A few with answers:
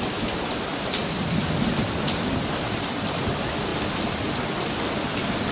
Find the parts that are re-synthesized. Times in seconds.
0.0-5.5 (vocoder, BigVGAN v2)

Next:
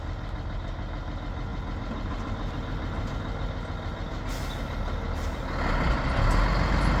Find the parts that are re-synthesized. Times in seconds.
none

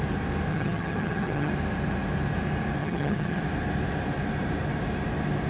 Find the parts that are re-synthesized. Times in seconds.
0.5-1.5 (vocoder, HiFi-GAN); 2.8-3.4

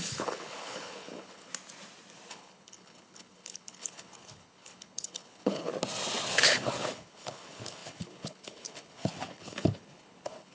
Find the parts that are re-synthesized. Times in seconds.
0.0-1.5 (codec, HILCodec); 2.3-5.7; 6.3-10.5

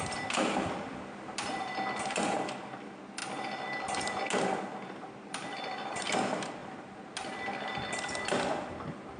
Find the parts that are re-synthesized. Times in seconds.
none

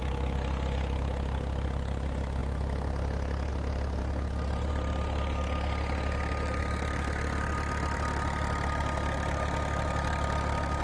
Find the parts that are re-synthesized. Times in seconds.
none

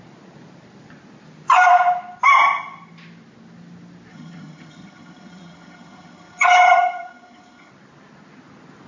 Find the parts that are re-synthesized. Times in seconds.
4.1-7.7 (vocoder, HiFi-GAN)